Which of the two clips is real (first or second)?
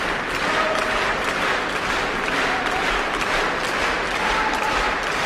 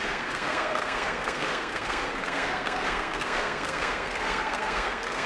first